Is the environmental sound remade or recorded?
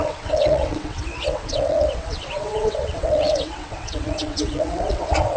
remade